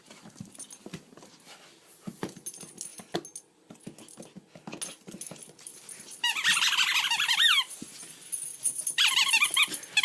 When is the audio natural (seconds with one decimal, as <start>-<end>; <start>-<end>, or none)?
0.0-10.0